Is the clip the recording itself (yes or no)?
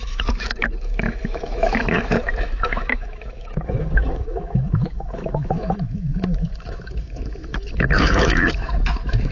no